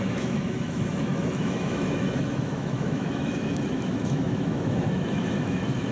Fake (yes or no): yes